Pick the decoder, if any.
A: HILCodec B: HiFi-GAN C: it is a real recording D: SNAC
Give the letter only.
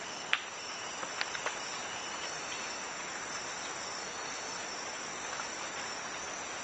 C